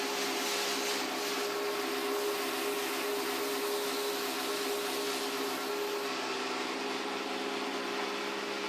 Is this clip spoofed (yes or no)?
no